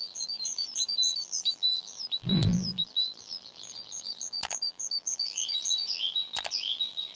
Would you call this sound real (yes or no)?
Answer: no